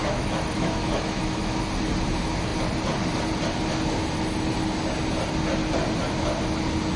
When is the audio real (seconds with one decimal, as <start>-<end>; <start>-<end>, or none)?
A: 1.6-7.0